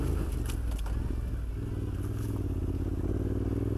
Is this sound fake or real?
real